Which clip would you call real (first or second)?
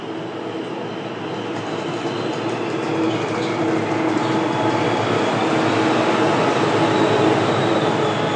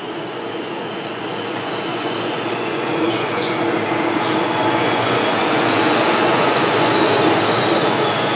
first